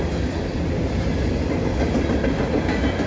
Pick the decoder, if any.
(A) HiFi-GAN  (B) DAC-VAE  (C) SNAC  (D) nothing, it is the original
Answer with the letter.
D